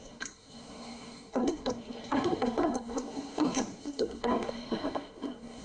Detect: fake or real fake